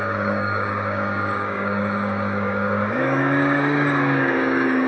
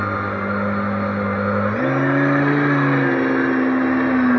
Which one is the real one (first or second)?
second